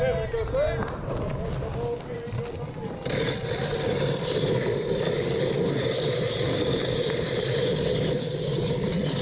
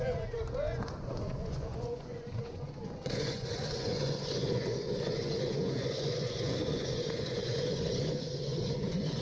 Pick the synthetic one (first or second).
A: second